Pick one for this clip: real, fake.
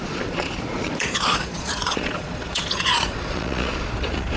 fake